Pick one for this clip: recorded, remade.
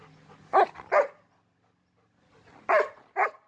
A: recorded